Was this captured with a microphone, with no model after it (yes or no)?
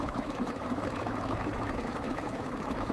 no